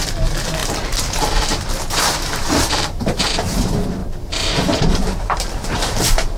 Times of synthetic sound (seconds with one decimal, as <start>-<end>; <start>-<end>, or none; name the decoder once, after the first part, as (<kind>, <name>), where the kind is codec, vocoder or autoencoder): 0.6-3.0 (vocoder, BigVGAN v2); 4.0-6.4